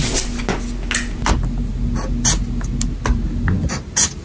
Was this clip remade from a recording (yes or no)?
no